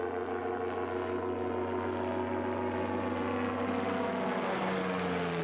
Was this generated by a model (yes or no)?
no